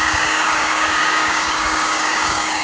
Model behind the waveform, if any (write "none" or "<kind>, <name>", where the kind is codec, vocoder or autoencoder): codec, DAC